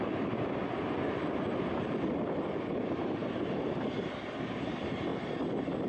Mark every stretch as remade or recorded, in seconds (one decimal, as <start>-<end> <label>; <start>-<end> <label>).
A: 0.0-0.6 remade; 0.6-2.7 recorded; 2.7-5.1 remade; 5.1-5.9 recorded